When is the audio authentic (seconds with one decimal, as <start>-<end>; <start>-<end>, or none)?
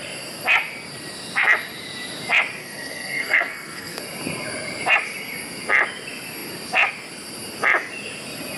0.0-2.6; 4.0-8.6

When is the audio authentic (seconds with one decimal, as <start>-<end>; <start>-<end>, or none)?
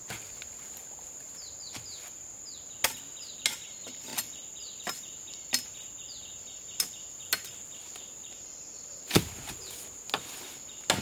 0.0-11.0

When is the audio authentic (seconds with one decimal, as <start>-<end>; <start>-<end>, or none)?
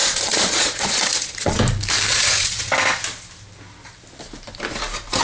1.6-2.1; 2.7-5.2